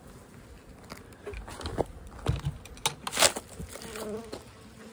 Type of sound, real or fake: real